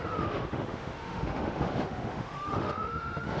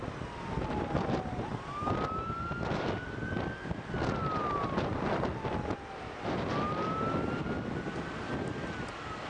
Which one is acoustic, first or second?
second